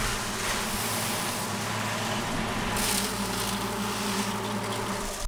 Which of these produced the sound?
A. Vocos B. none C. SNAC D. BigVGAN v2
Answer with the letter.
B